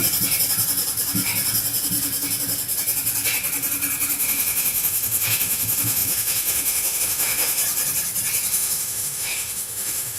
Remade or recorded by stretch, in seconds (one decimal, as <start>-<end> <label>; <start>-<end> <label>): 0.0-4.2 recorded; 4.2-7.6 remade; 7.6-8.5 recorded; 8.5-10.2 remade